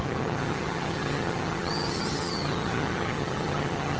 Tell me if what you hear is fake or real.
fake